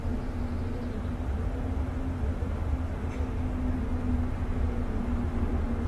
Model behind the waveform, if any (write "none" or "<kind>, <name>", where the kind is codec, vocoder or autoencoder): none